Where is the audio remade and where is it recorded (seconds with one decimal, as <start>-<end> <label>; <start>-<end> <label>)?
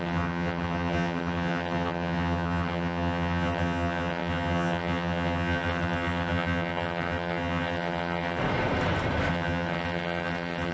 0.0-8.4 remade; 8.4-9.3 recorded; 9.3-10.7 remade